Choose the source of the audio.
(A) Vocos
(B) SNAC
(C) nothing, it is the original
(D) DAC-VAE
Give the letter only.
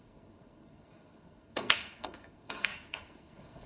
B